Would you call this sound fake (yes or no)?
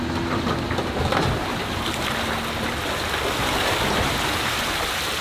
no